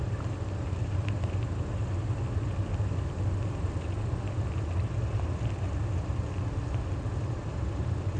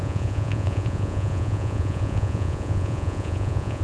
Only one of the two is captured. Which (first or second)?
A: first